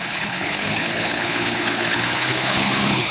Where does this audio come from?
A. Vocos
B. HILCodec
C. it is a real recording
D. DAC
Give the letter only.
B